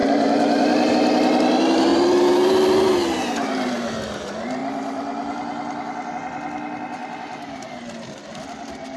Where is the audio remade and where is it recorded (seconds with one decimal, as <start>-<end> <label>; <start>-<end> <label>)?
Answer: 0.0-0.9 remade; 0.9-1.9 recorded; 1.9-2.5 remade; 2.5-4.6 recorded; 4.6-6.1 remade; 6.1-9.0 recorded